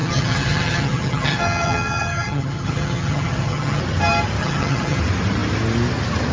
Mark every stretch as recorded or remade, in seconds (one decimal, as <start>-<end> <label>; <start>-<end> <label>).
0.0-3.8 remade; 3.8-4.4 recorded; 4.4-5.0 remade; 5.0-6.3 recorded